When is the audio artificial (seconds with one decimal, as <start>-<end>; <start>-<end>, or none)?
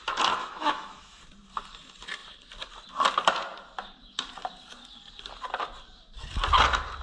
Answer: 0.4-1.2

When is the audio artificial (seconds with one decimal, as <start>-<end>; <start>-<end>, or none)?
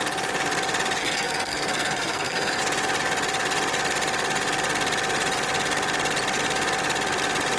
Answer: 1.0-2.6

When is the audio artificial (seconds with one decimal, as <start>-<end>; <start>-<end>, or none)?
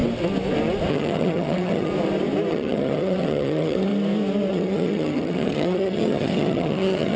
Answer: 0.9-1.9; 2.5-3.9; 4.5-7.2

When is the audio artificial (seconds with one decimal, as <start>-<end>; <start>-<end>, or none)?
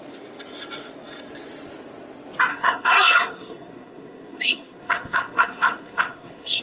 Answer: 2.5-6.6